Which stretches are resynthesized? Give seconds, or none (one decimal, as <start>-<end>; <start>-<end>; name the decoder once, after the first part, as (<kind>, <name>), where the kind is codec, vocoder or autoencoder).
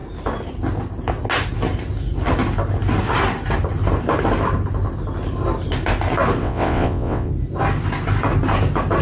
6.4-7.3 (vocoder, WaveNeXt)